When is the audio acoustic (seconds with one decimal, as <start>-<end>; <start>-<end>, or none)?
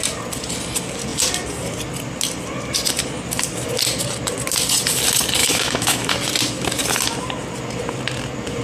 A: 0.0-5.4; 6.1-8.6